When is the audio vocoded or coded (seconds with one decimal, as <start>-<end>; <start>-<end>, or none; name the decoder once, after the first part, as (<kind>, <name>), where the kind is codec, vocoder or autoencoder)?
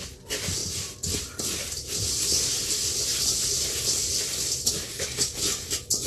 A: 4.9-6.1 (codec, DAC)